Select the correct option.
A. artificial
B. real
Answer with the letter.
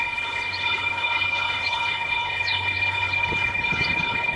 A